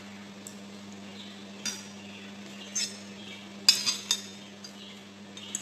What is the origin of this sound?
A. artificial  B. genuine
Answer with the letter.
B